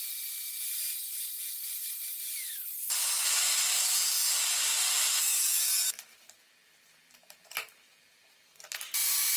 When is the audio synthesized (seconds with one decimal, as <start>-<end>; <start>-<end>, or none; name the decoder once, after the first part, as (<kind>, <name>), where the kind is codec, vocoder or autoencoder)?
none